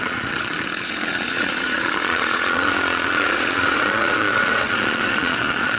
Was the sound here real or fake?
fake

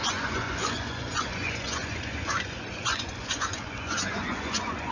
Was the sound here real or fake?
fake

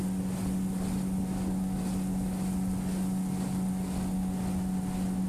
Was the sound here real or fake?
real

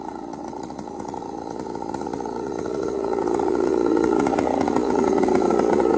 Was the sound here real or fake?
fake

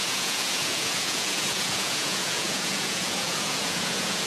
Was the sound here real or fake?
fake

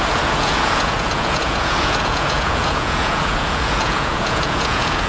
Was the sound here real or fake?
fake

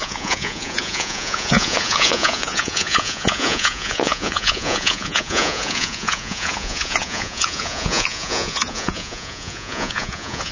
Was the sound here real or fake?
fake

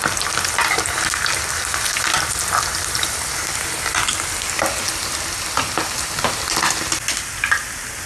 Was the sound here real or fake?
real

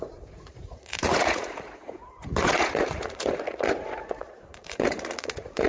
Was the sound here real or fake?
fake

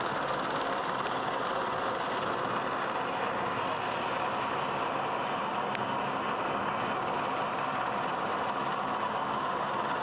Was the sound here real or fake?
real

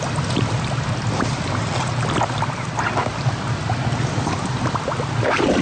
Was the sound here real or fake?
real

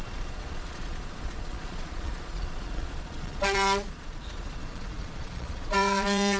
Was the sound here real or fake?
fake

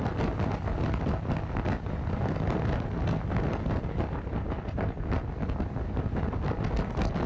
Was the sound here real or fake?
real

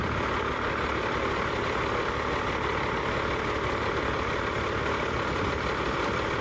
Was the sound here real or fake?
real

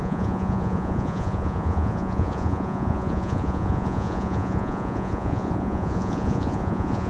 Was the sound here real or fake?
fake